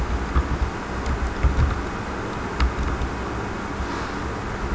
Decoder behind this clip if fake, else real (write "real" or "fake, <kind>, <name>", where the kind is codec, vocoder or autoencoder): real